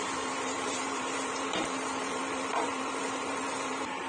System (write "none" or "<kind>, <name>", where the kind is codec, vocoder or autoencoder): vocoder, BigVGAN v2